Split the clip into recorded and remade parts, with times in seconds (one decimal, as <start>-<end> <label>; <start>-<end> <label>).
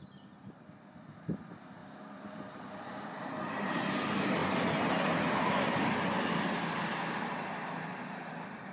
0.0-4.4 remade; 4.4-5.4 recorded; 5.4-8.7 remade